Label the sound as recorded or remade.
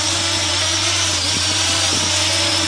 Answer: remade